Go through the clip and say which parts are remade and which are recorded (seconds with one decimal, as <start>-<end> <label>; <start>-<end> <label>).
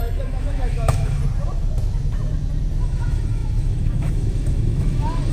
0.0-1.2 remade; 1.2-2.8 recorded; 2.8-5.3 remade